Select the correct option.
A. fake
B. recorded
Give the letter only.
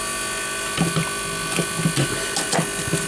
B